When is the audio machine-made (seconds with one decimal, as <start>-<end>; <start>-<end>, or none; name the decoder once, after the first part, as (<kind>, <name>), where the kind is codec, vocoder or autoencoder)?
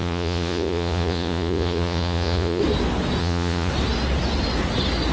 0.0-2.6 (vocoder, Vocos); 3.2-3.7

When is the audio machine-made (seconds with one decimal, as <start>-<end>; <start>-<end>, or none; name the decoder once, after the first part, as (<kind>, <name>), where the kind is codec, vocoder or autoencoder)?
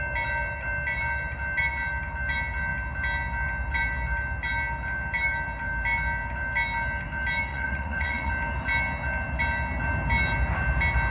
7.5-8.3 (vocoder, Vocos)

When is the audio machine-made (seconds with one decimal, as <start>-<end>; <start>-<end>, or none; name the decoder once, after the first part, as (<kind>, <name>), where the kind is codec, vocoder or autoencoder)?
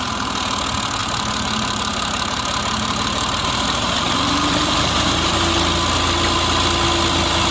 1.0-5.5 (vocoder, BigVGAN v2)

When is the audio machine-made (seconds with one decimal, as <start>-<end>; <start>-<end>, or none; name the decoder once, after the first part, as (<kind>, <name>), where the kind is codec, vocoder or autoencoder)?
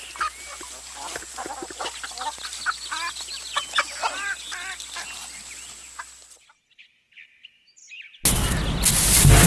none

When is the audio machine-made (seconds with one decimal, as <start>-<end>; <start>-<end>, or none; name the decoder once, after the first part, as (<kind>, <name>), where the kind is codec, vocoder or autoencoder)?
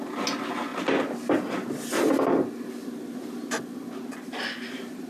none